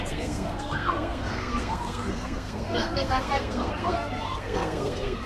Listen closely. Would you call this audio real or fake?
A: fake